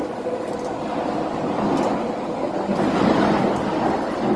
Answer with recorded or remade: recorded